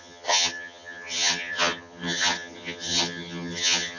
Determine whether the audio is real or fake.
fake